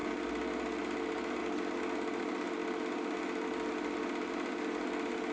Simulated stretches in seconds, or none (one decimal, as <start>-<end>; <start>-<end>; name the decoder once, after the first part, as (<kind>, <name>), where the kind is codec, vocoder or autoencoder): none